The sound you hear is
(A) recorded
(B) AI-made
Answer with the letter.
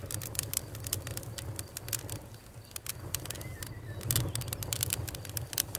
A